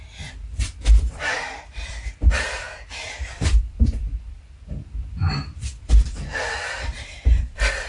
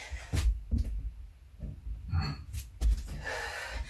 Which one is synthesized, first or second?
first